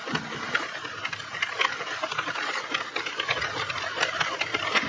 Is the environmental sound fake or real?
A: real